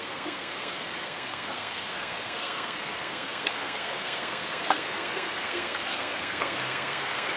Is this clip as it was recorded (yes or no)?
no